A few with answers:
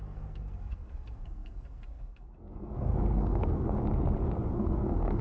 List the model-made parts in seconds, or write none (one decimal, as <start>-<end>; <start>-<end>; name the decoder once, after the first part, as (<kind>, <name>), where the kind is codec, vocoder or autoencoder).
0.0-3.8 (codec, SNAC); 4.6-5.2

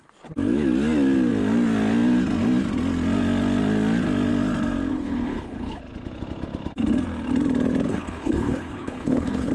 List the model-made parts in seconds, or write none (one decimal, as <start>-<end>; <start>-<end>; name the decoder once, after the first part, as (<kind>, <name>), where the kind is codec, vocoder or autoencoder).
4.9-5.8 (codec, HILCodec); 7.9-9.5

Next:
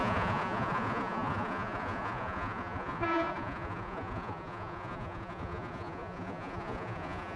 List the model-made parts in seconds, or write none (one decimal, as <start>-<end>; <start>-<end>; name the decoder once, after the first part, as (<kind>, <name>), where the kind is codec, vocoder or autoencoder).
0.0-7.4 (vocoder, Vocos)